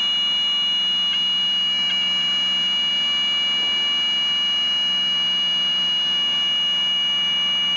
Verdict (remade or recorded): recorded